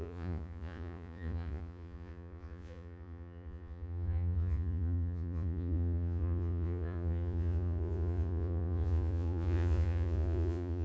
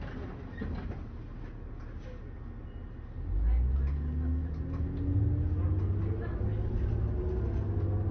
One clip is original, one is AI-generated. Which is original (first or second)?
second